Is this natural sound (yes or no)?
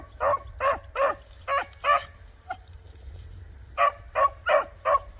yes